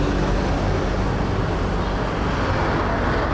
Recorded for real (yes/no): yes